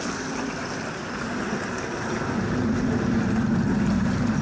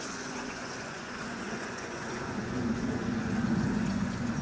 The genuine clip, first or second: first